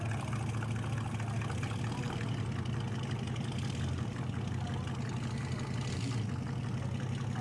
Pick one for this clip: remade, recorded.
recorded